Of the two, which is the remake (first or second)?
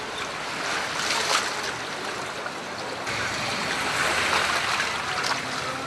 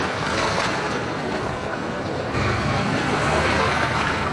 second